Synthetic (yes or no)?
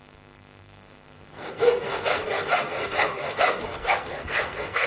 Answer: yes